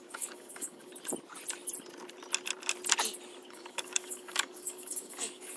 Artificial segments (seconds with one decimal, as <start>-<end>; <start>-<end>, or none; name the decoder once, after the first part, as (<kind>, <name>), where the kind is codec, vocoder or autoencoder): 0.0-0.9 (codec, DAC); 3.5-5.6